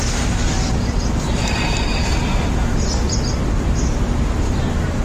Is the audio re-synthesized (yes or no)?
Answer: no